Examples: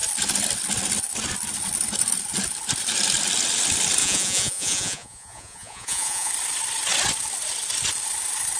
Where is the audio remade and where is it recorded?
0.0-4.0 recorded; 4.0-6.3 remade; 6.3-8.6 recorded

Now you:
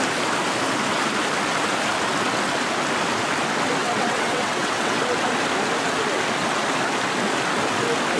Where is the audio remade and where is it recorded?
0.0-3.8 recorded; 3.8-5.0 remade; 5.0-8.2 recorded